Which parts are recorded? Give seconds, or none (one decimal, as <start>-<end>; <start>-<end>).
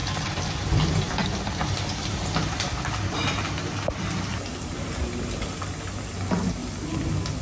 0.0-7.4